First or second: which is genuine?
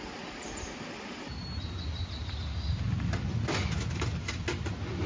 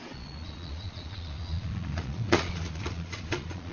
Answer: first